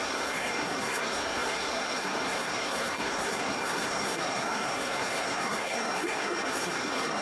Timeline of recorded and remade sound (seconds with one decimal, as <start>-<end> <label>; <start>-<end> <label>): 0.0-7.2 remade